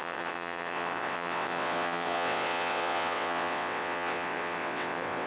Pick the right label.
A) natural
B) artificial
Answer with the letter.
B